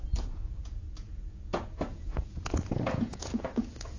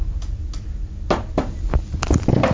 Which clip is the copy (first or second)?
first